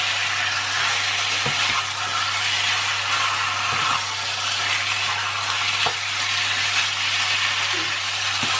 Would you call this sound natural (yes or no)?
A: yes